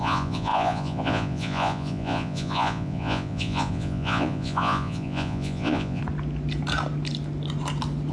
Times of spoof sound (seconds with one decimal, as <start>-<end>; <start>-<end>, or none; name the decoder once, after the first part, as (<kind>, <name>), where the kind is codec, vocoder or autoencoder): 0.0-6.0 (vocoder, Vocos)